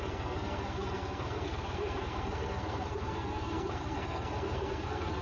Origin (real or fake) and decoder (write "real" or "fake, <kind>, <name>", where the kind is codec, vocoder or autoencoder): fake, codec, SNAC